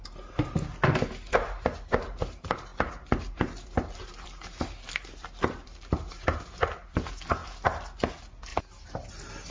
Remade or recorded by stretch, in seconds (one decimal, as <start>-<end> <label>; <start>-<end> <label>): 0.0-9.5 recorded